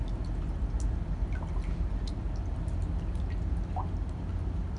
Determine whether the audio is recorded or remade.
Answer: recorded